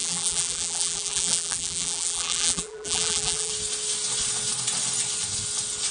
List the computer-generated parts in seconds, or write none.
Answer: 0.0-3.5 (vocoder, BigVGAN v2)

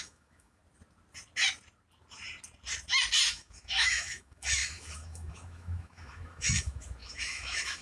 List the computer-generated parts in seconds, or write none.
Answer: 0.0-0.6 (autoencoder, DAC-VAE); 3.3-7.8

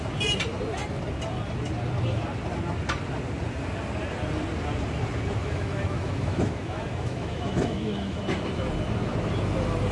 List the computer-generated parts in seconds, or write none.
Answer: 5.4-8.2 (autoencoder, DAC-VAE)

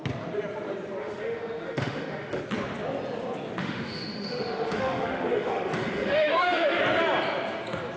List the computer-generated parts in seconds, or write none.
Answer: 1.0-2.4 (autoencoder, DAC-VAE); 3.6-6.8